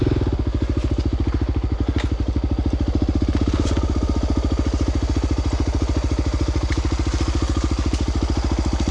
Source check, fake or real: real